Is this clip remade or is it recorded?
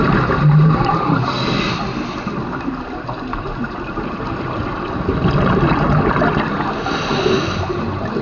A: recorded